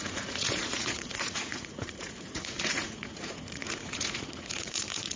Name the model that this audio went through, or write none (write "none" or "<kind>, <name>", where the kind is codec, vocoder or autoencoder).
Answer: vocoder, Vocos